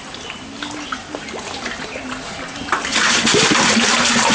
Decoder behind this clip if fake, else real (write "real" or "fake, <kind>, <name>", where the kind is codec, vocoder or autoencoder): real